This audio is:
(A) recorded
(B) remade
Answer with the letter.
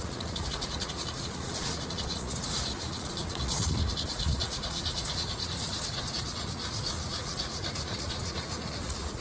B